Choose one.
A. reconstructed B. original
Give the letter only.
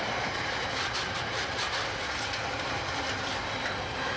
B